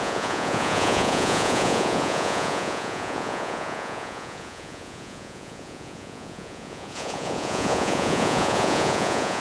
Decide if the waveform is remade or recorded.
remade